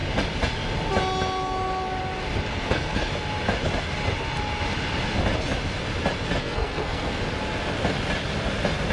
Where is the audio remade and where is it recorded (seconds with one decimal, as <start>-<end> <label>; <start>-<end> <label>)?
0.0-2.5 recorded; 2.5-3.1 remade; 3.1-6.4 recorded; 6.4-7.2 remade; 7.2-8.9 recorded